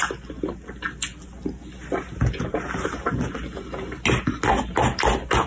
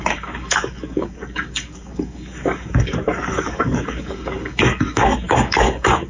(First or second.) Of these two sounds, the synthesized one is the second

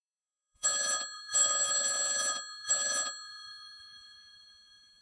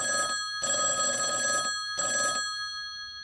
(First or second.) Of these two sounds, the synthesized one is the first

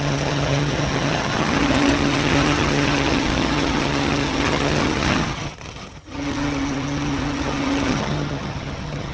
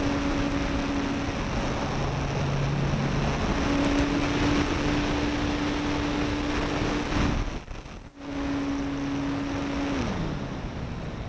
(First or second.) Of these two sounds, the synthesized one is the first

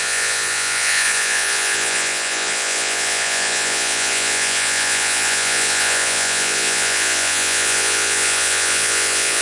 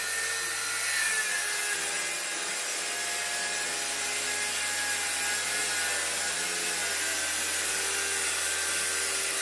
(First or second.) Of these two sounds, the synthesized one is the first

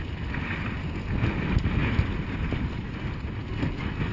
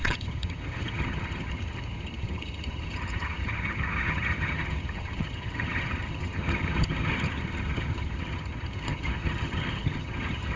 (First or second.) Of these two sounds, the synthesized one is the second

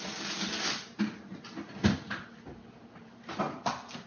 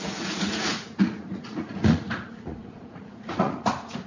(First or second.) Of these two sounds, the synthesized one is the second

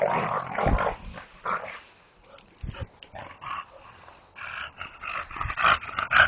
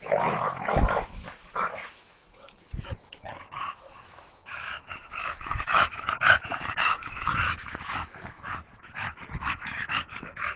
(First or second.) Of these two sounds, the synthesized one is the second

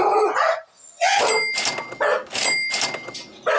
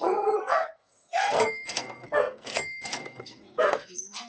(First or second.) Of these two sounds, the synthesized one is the second